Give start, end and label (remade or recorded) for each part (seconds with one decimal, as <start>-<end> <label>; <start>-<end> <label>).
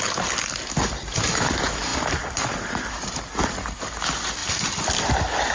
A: 0.0-5.5 recorded